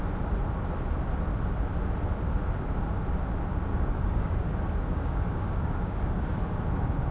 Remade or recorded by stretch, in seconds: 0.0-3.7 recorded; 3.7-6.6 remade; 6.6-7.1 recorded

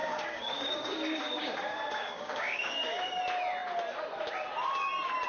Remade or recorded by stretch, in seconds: 0.0-3.2 remade; 3.2-5.3 recorded

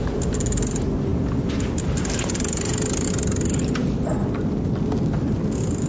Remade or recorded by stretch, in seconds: 0.0-5.9 recorded

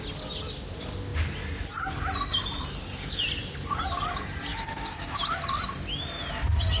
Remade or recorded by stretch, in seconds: 0.0-4.5 recorded; 4.5-5.2 remade; 5.2-6.8 recorded